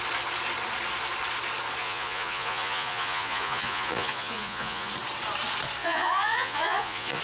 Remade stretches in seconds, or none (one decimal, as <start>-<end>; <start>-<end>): 1.8-4.9; 5.8-7.2